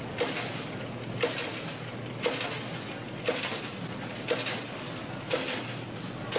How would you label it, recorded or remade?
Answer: recorded